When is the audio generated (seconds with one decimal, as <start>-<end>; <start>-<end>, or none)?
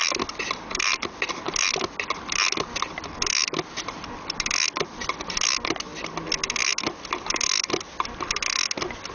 none